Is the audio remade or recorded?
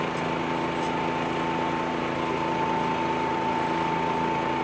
recorded